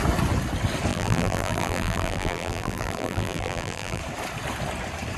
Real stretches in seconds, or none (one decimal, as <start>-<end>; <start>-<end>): 0.0-0.9; 4.0-5.2

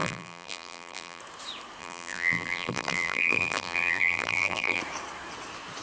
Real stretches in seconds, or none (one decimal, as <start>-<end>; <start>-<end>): 1.2-1.8; 4.8-5.8

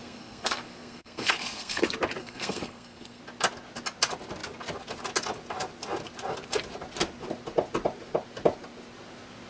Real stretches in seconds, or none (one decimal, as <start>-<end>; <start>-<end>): 1.8-2.2; 3.2-9.5

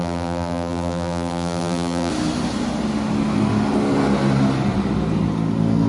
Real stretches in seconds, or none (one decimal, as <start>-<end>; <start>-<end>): 2.1-5.9

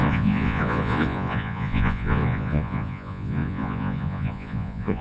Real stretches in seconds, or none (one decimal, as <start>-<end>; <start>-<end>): none

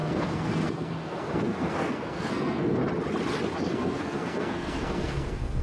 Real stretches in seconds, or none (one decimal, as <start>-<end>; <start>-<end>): 2.8-3.6